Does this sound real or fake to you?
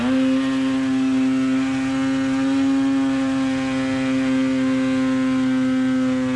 real